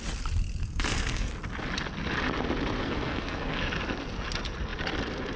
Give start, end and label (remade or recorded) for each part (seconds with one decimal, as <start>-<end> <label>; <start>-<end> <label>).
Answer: 0.0-0.6 recorded; 0.6-1.3 remade; 1.3-2.8 recorded; 2.8-3.6 remade; 3.6-5.4 recorded